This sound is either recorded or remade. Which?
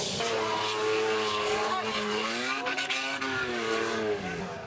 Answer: remade